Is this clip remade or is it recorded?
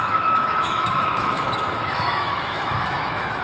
remade